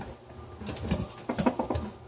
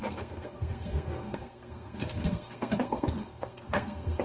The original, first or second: first